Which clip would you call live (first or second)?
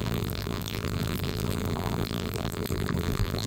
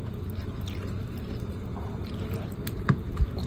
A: second